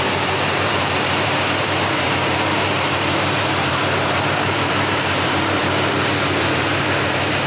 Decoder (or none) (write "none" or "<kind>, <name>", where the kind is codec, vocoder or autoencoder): vocoder, BigVGAN v2